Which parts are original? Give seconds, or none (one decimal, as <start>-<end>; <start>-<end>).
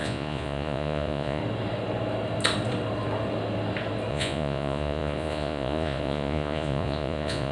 1.4-4.1